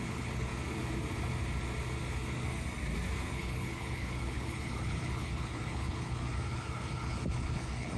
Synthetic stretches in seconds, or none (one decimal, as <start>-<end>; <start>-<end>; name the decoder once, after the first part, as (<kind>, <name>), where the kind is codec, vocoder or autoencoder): 0.0-0.5 (codec, HILCodec); 3.3-8.0